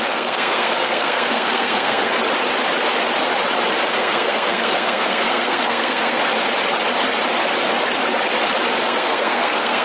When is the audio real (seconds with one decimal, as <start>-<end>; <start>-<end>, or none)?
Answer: 2.1-3.9; 6.2-8.8